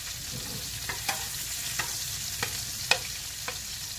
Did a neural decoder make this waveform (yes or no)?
no